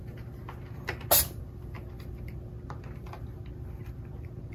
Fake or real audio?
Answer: real